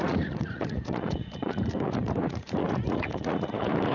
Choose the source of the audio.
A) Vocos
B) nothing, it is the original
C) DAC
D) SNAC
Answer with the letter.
A